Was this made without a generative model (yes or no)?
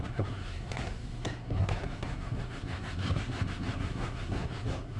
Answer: no